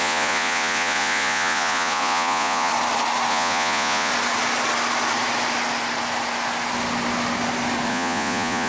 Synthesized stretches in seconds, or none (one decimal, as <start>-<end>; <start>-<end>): 0.0-2.7; 3.3-4.1; 7.9-8.7